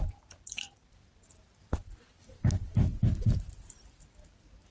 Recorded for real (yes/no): yes